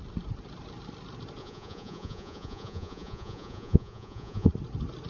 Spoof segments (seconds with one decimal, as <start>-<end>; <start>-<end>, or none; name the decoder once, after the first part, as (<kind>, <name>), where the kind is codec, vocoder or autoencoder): 1.4-4.5 (vocoder, Vocos)